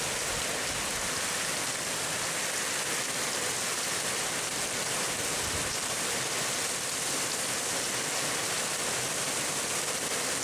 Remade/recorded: recorded